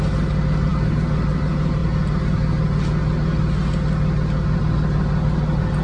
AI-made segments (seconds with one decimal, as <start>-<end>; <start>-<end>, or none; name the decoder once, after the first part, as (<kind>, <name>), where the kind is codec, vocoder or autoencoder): none